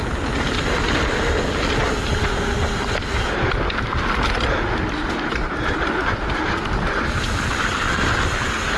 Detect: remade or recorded recorded